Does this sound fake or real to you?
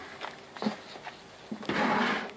real